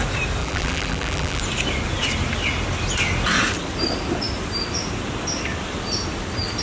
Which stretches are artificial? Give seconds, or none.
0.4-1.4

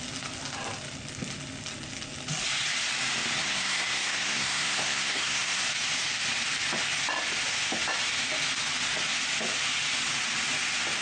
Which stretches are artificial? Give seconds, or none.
3.4-5.6

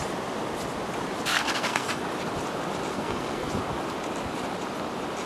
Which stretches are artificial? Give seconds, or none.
1.3-2.0; 2.9-3.5